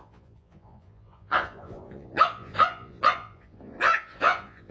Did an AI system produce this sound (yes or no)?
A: yes